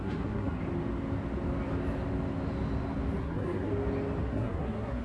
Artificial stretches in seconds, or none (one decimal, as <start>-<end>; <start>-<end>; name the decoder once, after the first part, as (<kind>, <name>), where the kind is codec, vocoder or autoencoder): 0.0-0.6 (codec, SNAC); 3.2-3.7; 4.2-5.0